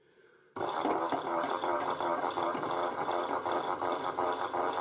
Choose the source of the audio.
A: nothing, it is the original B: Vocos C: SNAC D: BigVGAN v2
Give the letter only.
D